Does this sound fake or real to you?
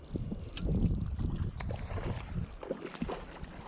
real